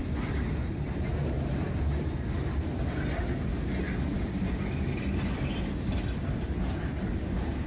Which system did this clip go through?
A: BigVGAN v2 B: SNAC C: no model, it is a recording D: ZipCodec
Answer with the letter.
C